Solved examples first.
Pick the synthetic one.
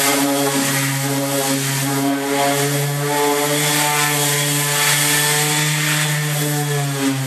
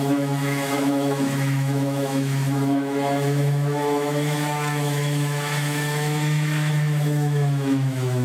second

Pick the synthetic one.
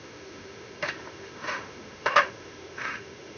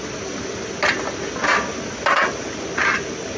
first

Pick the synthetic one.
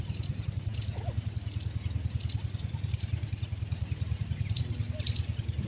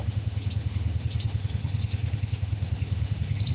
second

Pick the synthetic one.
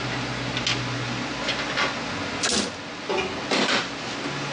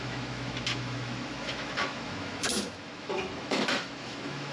second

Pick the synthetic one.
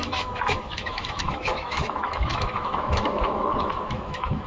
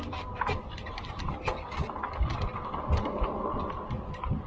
first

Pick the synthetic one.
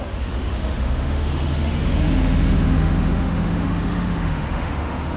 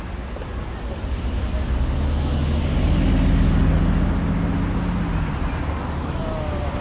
first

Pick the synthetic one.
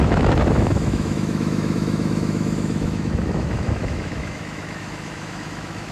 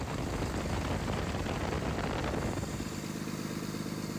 first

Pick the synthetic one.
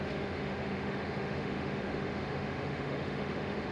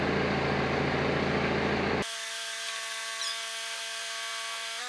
first